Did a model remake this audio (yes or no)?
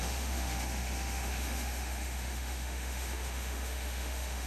yes